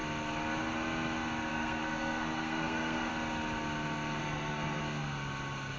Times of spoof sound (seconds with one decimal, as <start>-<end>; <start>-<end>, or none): 1.5-3.1; 4.2-4.8